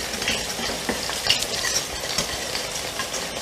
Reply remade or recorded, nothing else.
recorded